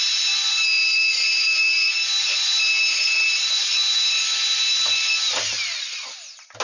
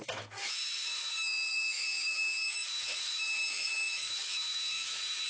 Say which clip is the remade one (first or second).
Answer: second